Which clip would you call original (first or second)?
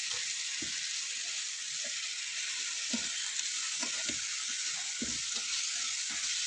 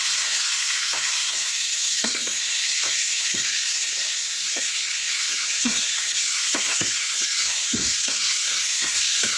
first